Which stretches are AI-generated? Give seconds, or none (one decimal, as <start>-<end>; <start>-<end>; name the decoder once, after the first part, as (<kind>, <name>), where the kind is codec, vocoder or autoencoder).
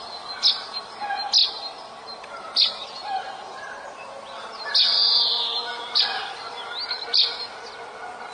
1.4-6.0 (vocoder, BigVGAN v2)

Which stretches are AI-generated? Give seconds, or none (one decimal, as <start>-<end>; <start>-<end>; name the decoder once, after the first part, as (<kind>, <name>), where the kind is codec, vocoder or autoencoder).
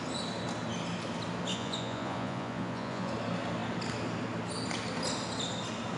1.5-3.1 (vocoder, Vocos)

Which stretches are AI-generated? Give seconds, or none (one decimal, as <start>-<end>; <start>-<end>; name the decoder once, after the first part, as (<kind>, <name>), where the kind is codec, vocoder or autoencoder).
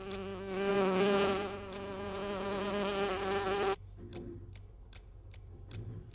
0.7-2.7 (vocoder, Vocos)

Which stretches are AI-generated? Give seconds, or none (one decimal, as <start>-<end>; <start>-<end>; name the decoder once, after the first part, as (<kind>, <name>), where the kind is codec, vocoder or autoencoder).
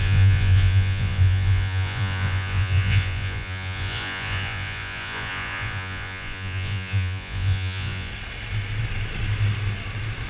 0.0-8.1 (vocoder, Vocos)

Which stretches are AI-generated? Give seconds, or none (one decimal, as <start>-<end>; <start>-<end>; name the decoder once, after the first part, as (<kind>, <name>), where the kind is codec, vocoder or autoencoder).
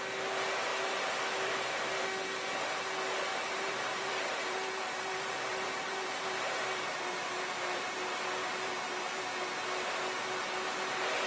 3.3-8.0 (vocoder, BigVGAN v2); 8.4-9.2